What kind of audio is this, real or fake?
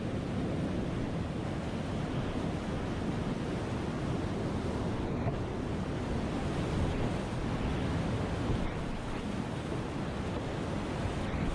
real